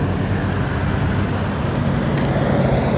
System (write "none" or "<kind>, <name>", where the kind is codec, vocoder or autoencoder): none